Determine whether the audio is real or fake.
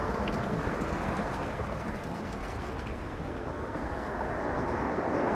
fake